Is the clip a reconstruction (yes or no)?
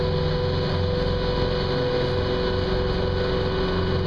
no